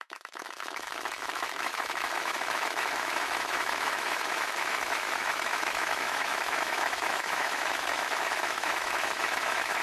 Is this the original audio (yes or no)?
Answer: no